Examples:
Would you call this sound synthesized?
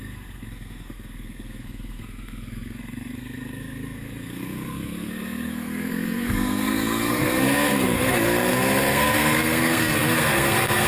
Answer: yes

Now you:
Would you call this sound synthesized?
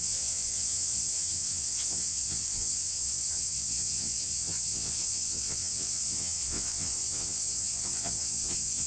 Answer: yes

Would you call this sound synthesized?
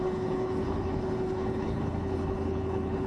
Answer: yes